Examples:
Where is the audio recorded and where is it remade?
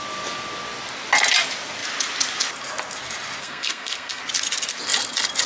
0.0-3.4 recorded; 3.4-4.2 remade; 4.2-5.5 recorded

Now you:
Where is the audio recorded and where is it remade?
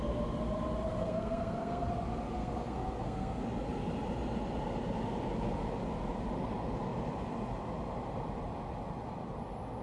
0.0-1.0 recorded; 1.0-1.9 remade; 1.9-2.4 recorded; 2.4-3.4 remade; 3.4-9.8 recorded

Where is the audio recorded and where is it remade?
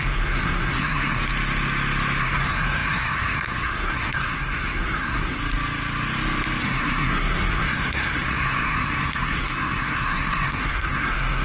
0.0-1.2 remade; 1.2-2.2 recorded; 2.2-5.4 remade; 5.4-6.6 recorded; 6.6-11.4 remade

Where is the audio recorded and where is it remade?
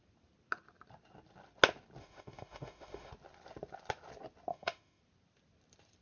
0.0-2.0 recorded; 2.0-3.1 remade; 3.1-4.5 recorded; 4.5-5.0 remade; 5.0-6.0 recorded